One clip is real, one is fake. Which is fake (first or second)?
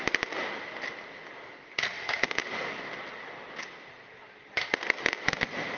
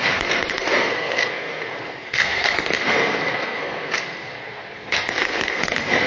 second